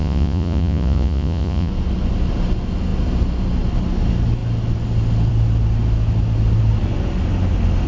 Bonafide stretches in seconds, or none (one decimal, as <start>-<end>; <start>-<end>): 1.7-7.9